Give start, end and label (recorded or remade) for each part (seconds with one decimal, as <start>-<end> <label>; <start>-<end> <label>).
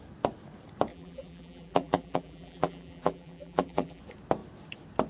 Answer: 0.0-0.9 recorded; 0.9-4.0 remade; 4.0-5.1 recorded